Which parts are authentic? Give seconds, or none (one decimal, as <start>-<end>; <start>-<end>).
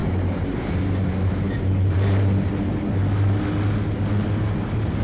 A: 3.0-5.0